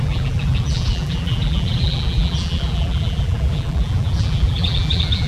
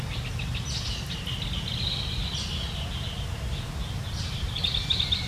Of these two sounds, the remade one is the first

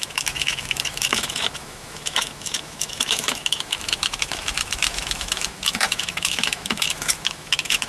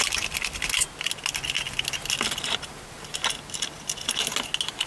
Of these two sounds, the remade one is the first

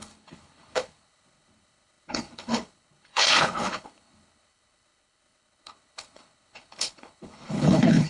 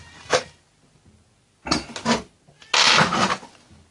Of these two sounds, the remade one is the first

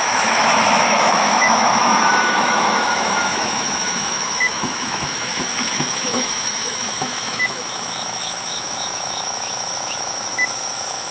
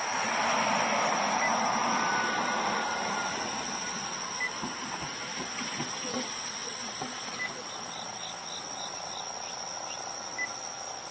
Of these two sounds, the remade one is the first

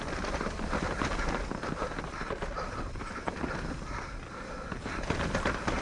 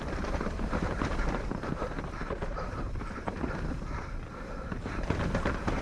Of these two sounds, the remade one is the second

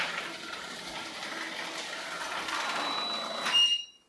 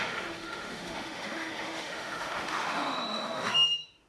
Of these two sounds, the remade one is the second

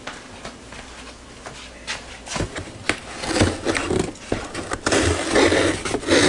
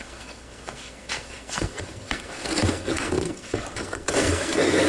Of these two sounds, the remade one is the second